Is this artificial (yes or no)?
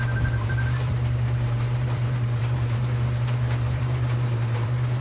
yes